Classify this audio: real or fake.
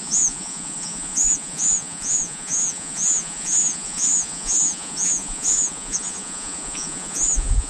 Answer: fake